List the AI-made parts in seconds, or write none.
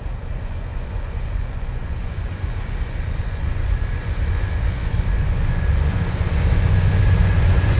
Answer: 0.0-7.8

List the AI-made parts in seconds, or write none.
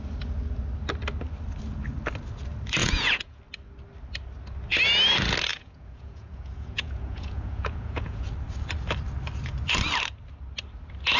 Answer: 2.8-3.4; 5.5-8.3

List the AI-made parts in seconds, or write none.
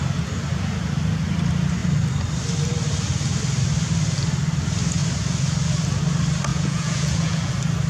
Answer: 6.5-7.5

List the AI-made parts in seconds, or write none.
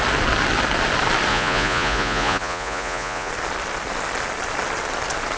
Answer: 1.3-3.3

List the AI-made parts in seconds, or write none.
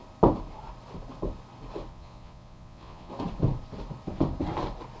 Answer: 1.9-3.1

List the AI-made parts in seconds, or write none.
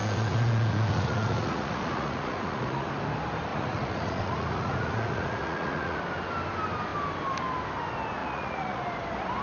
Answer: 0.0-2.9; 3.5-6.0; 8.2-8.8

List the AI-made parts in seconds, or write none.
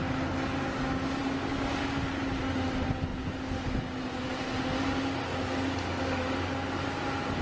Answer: none